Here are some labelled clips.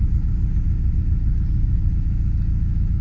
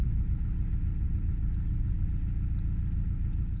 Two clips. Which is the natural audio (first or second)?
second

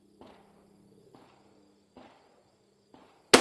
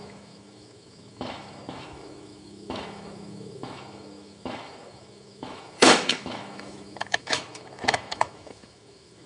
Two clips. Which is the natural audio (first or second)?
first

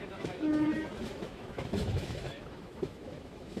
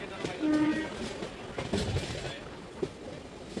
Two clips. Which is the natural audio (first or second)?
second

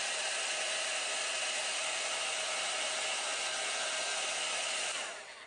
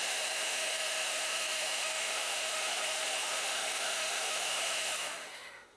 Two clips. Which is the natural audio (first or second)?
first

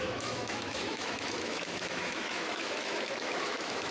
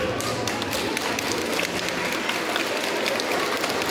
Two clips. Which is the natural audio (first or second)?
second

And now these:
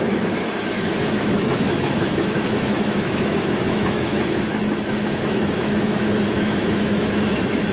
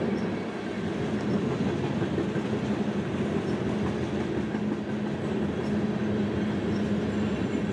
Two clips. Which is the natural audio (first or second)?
second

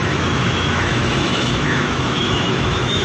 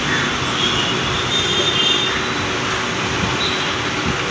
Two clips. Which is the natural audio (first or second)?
second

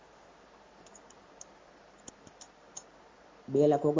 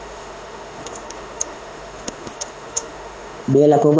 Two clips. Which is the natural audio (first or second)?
first